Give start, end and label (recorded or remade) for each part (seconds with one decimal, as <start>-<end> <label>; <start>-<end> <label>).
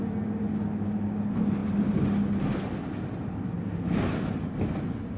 0.0-5.2 recorded